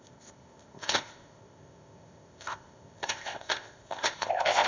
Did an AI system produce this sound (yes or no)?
yes